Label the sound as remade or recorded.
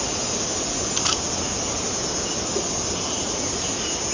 recorded